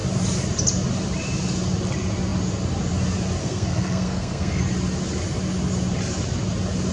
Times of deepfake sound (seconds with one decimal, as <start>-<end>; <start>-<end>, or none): 3.4-4.6